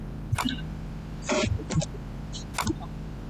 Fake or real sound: real